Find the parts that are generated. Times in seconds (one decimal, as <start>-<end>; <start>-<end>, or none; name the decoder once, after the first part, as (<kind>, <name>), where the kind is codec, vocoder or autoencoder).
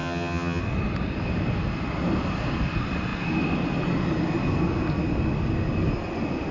0.0-0.6 (vocoder, HiFi-GAN)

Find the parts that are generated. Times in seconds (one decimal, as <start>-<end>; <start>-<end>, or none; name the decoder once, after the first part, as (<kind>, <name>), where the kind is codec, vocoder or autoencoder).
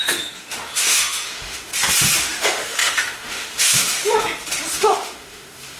0.0-1.7 (autoencoder, DAC-VAE); 2.2-4.0; 4.7-5.8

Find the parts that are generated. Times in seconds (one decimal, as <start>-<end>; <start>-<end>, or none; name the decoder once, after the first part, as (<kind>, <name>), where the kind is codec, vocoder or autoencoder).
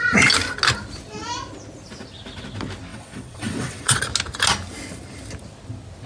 2.9-4.0 (vocoder, WaveNeXt)